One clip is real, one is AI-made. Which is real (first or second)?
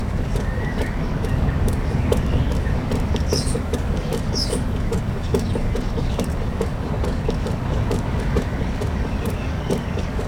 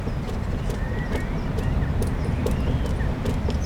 second